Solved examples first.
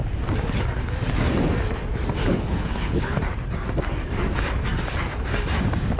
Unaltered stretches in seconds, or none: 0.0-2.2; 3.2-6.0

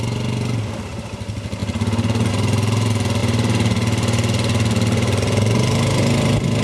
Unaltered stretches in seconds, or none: 0.0-6.6